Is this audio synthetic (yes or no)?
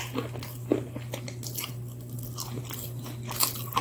no